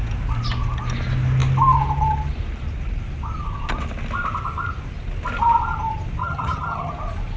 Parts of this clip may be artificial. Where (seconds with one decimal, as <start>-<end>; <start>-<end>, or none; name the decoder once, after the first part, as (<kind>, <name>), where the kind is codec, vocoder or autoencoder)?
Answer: 6.2-6.9 (vocoder, HiFi-GAN)